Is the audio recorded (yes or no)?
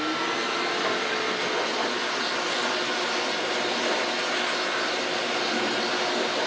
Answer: yes